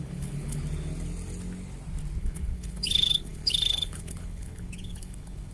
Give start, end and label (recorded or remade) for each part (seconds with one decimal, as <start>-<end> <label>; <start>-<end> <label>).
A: 0.0-0.6 remade; 0.6-2.2 recorded; 2.2-5.5 remade